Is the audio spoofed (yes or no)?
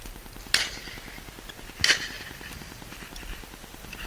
no